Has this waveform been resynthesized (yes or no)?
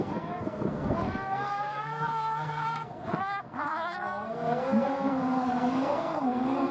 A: yes